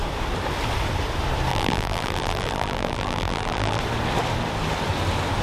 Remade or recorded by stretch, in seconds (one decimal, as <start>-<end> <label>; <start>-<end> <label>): 0.0-1.5 recorded; 1.5-3.8 remade; 3.8-5.4 recorded